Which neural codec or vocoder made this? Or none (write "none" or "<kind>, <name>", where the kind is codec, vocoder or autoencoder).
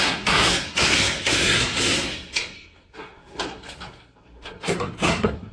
codec, SNAC